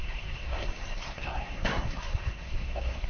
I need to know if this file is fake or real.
fake